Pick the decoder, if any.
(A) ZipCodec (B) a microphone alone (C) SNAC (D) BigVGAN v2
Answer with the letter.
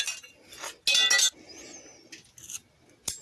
B